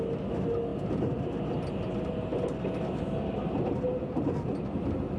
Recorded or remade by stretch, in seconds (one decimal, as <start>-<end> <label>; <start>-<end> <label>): 0.0-5.2 recorded